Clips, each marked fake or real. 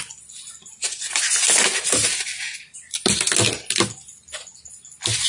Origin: real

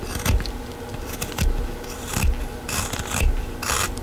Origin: real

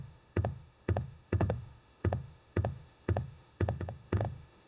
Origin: fake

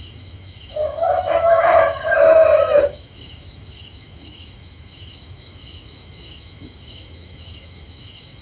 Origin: fake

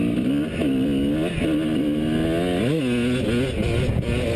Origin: real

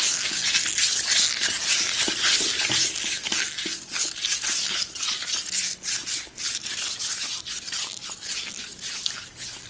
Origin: real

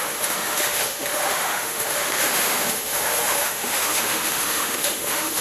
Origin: fake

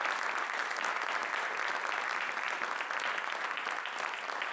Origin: real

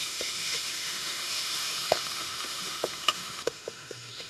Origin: fake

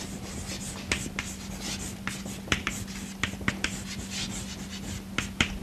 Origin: real